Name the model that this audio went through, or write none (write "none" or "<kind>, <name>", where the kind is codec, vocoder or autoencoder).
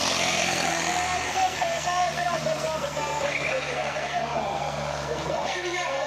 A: codec, SNAC